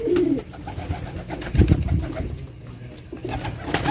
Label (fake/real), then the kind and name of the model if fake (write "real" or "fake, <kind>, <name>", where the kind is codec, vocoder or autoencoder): real